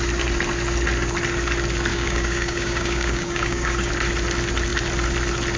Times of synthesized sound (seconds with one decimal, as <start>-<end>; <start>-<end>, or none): 1.9-3.9